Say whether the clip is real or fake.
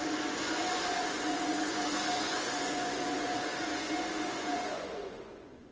fake